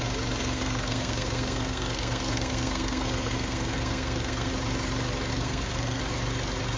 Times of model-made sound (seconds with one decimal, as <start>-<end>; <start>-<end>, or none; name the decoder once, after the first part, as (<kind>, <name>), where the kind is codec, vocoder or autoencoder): 0.4-4.5 (codec, SNAC); 5.3-6.0